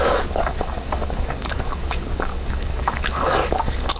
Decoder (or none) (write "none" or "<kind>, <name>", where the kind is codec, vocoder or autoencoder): codec, DAC